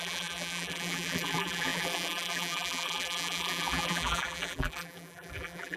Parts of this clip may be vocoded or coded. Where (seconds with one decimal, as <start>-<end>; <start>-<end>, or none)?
0.0-5.8